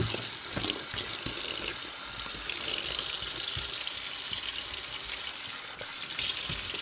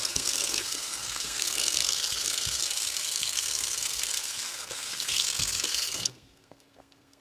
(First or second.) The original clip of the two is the first